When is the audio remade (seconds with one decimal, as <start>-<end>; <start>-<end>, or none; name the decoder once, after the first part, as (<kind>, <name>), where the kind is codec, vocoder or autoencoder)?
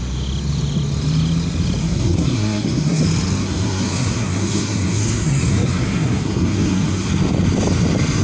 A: 1.8-3.0 (codec, SNAC); 3.4-7.1